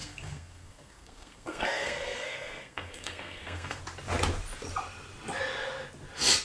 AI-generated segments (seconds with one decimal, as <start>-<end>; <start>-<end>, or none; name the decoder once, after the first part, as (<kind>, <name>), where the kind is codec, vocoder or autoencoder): 0.0-3.8 (codec, SNAC)